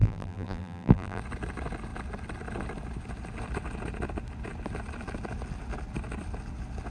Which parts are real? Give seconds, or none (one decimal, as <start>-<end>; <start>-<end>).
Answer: 1.2-6.9